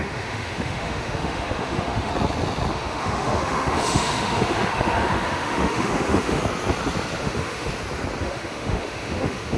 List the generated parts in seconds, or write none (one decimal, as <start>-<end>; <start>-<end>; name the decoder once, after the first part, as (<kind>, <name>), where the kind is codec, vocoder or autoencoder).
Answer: 0.0-2.1 (autoencoder, DAC-VAE); 2.7-6.4; 7.2-7.7; 8.2-9.6